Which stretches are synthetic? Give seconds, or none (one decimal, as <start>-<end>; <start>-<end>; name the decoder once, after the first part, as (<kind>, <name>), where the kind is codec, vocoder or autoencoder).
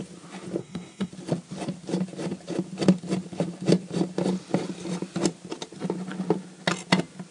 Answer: 0.6-1.1 (codec, SNAC)